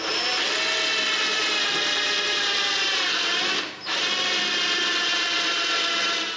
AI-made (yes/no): no